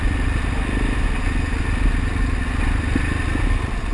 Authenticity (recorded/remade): recorded